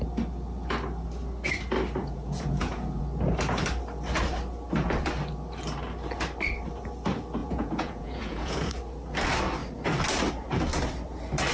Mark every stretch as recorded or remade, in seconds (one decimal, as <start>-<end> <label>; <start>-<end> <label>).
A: 0.0-2.0 recorded; 2.0-3.0 remade; 3.0-7.4 recorded; 7.4-8.7 remade; 8.7-11.5 recorded